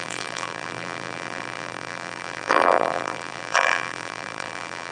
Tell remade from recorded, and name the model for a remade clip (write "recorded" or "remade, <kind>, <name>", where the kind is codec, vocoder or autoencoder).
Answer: remade, vocoder, BigVGAN v2